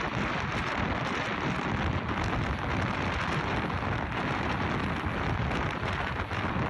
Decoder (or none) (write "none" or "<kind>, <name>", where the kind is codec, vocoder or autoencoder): none